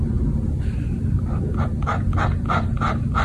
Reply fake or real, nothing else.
real